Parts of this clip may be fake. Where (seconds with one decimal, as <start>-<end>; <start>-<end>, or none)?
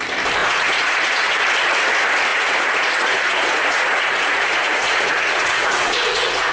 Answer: 0.4-1.4; 2.3-6.5